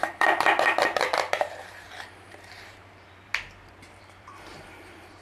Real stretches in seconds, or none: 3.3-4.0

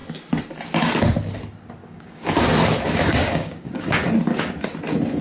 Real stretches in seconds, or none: 0.0-1.8; 2.5-3.2; 3.9-5.2

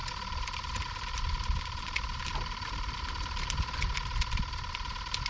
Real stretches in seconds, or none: 0.0-5.3

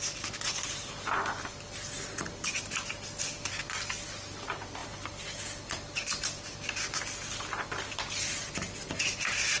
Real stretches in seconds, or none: 0.0-9.6

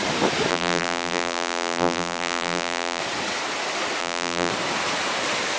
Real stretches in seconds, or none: 0.0-0.5; 3.0-4.0; 4.5-5.6